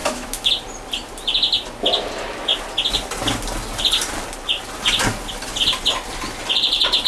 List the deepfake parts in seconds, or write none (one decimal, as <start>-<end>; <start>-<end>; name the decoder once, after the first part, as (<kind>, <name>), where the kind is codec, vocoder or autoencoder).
0.0-0.5 (autoencoder, DAC-VAE)